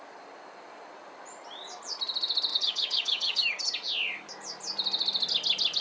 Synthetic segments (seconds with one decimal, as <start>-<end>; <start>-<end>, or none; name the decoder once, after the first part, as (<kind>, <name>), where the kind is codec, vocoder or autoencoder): 2.5-3.6 (codec, DAC)